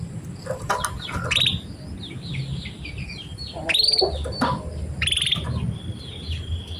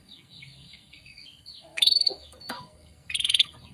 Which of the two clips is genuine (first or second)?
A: first